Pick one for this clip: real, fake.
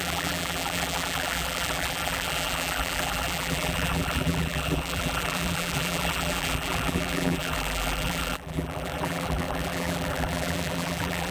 fake